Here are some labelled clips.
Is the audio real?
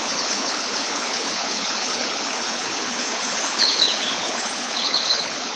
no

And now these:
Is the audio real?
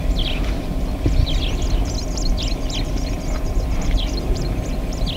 yes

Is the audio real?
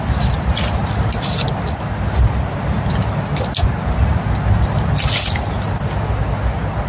yes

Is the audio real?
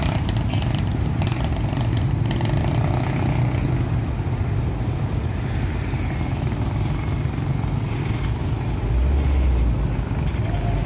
yes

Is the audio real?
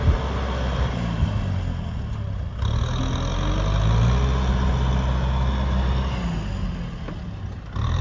yes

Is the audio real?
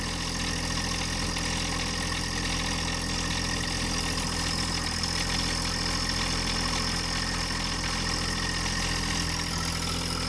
yes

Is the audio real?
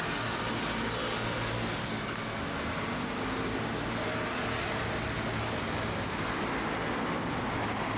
yes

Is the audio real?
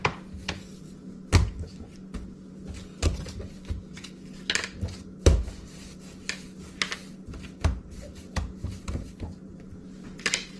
yes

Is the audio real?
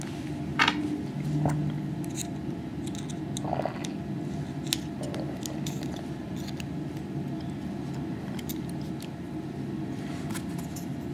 yes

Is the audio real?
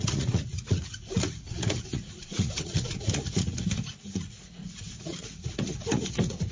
no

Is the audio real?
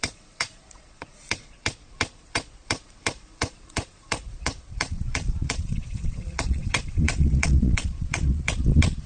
no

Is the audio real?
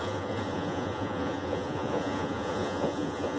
no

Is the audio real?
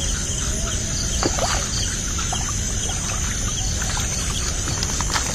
yes